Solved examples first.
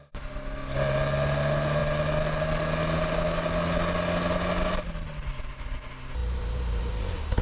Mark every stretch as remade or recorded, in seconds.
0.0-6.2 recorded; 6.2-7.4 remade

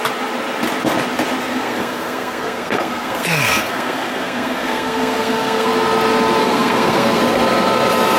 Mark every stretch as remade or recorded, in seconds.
0.0-1.5 recorded; 1.5-5.7 remade; 5.7-6.4 recorded; 6.4-7.2 remade; 7.2-8.2 recorded

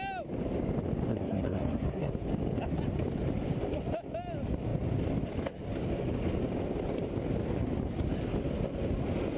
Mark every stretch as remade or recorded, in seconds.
0.0-1.1 recorded; 1.1-2.1 remade; 2.1-9.4 recorded

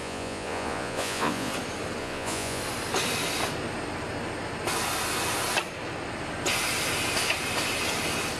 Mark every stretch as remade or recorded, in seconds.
0.0-1.5 remade; 1.5-2.0 recorded; 2.0-2.6 remade; 2.6-8.4 recorded

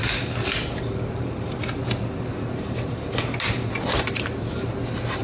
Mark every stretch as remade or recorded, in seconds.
0.0-5.2 recorded